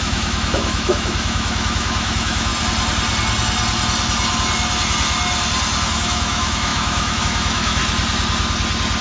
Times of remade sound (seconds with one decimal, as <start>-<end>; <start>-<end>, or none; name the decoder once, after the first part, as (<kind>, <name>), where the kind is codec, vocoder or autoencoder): 0.0-2.5 (autoencoder, DAC-VAE); 5.9-7.8